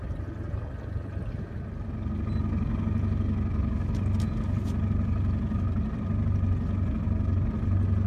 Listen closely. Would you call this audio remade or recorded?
recorded